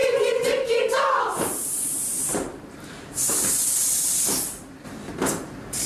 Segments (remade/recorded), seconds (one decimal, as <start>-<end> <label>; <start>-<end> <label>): 0.0-3.2 remade; 3.2-4.8 recorded; 4.8-5.9 remade